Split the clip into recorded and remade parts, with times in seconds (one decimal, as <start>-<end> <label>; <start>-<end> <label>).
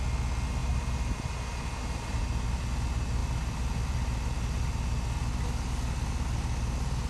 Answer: 0.0-0.6 recorded; 0.6-2.2 remade; 2.2-7.1 recorded